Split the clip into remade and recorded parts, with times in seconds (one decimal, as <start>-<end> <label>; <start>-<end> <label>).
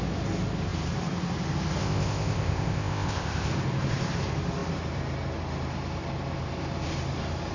0.0-1.8 recorded; 1.8-3.5 remade; 3.5-7.5 recorded